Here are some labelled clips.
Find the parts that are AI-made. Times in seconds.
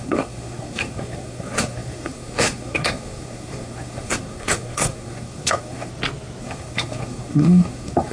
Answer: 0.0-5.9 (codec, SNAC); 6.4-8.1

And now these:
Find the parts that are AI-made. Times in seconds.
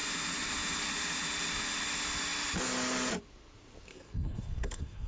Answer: 3.9-5.1 (codec, SNAC)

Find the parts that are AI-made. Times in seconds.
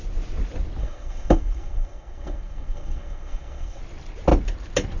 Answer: 0.8-3.8 (codec, SNAC)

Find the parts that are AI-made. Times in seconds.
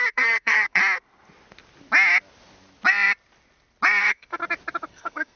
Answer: 0.0-0.8 (codec, SNAC); 4.0-4.4; 4.9-5.4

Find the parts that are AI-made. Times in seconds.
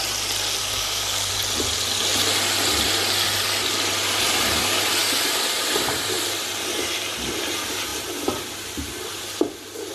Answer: 0.6-1.3 (codec, SNAC)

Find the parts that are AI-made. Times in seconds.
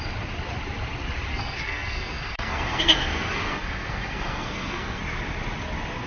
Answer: 1.3-5.0 (codec, SNAC)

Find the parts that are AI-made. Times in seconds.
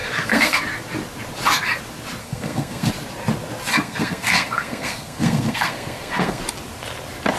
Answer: 0.0-0.6 (codec, SNAC); 2.2-2.9; 3.7-6.4